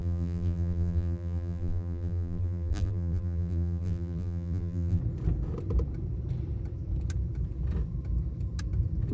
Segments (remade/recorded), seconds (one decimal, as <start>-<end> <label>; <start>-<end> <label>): 0.0-5.0 remade; 5.0-9.1 recorded